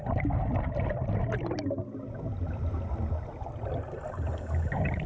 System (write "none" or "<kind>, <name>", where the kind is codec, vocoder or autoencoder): none